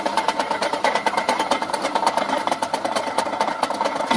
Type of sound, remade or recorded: recorded